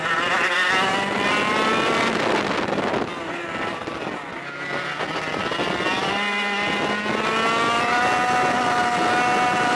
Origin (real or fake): real